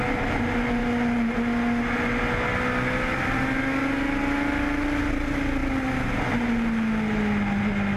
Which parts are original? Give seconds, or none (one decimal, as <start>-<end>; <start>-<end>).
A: 0.0-8.0